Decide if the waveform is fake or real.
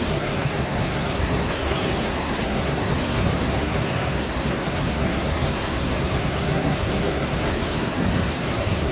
fake